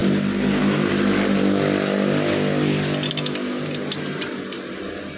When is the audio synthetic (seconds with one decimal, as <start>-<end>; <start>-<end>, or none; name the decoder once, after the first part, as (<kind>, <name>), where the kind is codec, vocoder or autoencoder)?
none